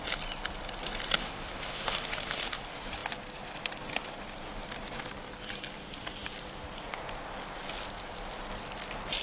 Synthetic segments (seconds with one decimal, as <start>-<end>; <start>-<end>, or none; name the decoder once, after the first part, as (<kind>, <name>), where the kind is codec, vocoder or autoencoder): 1.2-2.6 (autoencoder, DAC-VAE)